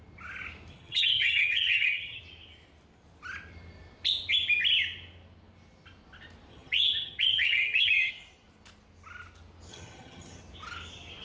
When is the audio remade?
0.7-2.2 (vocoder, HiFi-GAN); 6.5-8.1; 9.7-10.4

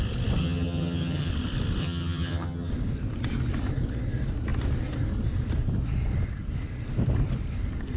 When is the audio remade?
0.4-1.3 (vocoder, HiFi-GAN); 1.8-2.7

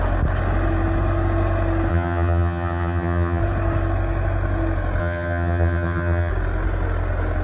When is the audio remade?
1.9-3.4 (vocoder, HiFi-GAN); 5.0-6.3

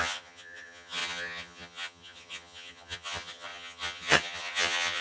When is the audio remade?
0.0-5.0 (vocoder, HiFi-GAN)